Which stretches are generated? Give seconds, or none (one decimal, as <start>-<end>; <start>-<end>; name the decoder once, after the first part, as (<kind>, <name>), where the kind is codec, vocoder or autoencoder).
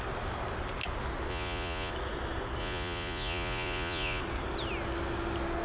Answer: 1.3-1.9 (vocoder, Vocos); 2.6-4.2